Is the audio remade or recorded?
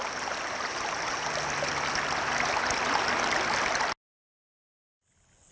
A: recorded